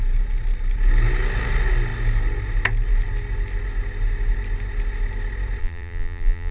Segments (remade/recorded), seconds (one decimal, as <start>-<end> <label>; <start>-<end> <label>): 0.0-5.6 recorded; 5.6-6.5 remade